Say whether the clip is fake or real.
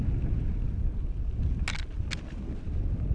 real